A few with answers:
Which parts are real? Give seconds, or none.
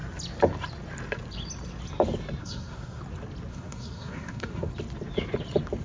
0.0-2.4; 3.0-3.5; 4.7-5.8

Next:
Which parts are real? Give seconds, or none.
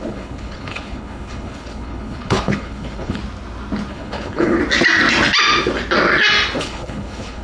3.2-3.9; 4.6-6.6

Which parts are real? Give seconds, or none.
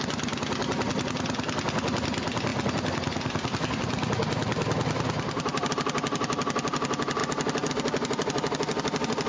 0.0-9.3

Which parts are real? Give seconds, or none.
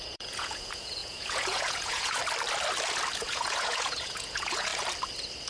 2.2-3.1; 4.7-5.5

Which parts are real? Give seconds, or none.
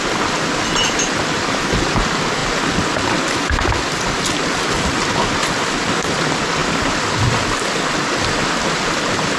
2.4-5.6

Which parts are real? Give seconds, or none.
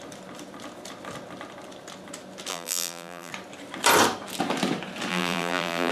0.0-2.5; 3.3-5.1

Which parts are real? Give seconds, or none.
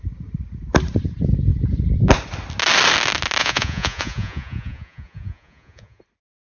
0.0-3.4; 6.0-6.6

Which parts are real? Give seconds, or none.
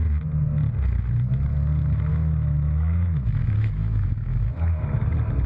0.0-2.1; 5.1-5.5